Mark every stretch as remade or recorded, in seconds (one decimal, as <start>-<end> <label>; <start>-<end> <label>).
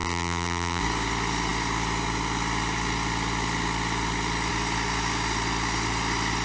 0.0-0.8 remade; 0.8-6.4 recorded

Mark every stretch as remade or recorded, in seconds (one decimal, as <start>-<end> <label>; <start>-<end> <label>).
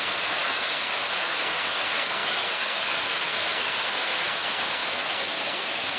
0.0-6.0 remade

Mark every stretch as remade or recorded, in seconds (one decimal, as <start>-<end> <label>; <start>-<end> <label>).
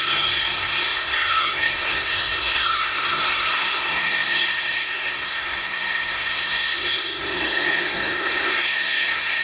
0.0-9.4 remade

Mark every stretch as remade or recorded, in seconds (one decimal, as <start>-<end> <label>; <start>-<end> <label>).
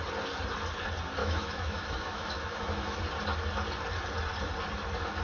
0.0-1.2 recorded; 1.2-3.0 remade; 3.0-5.2 recorded